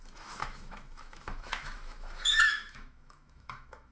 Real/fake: fake